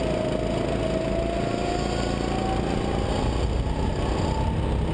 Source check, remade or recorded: recorded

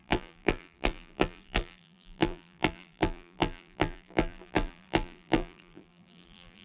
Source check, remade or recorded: remade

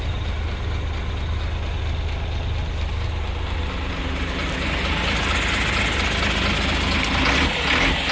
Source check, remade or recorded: recorded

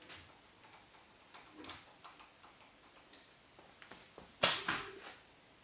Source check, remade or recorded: recorded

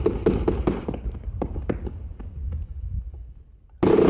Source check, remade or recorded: recorded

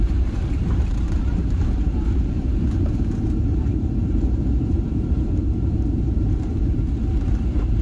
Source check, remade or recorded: remade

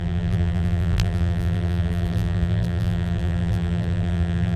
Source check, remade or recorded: remade